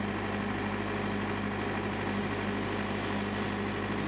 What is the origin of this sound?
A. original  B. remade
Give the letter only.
A